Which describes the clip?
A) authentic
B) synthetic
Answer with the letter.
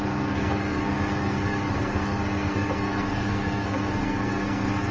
B